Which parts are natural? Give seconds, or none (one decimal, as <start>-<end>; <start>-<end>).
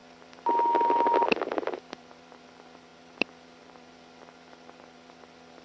0.0-5.6